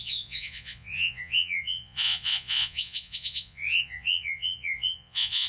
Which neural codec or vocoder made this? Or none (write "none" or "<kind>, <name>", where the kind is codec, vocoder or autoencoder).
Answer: vocoder, Vocos